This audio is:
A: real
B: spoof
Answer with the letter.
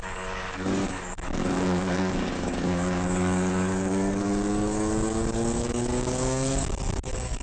B